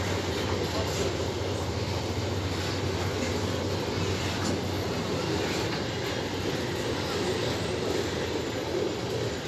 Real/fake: real